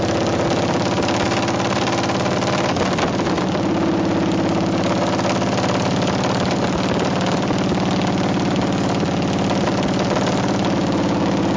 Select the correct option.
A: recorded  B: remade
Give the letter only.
A